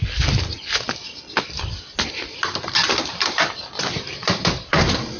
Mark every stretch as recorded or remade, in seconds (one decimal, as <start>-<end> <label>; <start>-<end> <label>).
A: 0.0-3.1 recorded; 3.1-5.2 remade